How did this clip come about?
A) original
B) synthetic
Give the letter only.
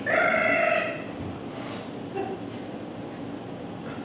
A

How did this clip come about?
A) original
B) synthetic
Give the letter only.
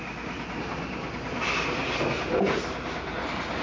A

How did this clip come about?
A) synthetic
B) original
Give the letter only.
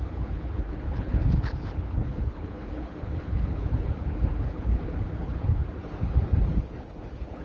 A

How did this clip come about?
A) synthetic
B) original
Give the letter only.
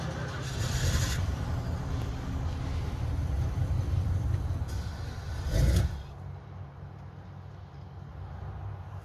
B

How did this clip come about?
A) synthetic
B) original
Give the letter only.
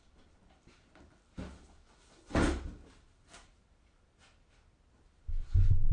B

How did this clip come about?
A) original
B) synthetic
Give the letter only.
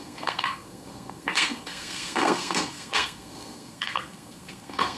B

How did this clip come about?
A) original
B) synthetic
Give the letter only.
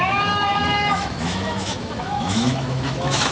B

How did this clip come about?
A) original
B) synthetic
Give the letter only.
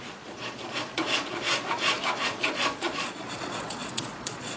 B